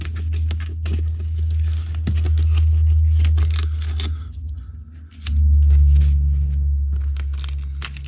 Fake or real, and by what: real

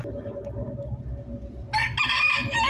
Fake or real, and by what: real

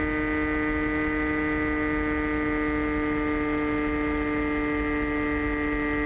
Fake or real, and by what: real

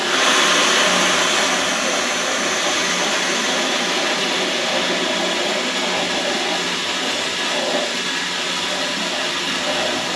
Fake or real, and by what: real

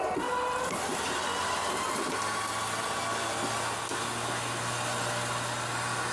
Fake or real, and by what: real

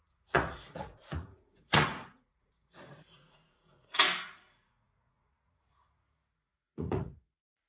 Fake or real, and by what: fake, vocoder, Vocos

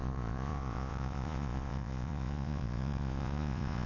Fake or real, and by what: fake, vocoder, Vocos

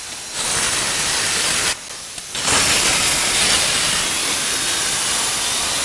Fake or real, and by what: real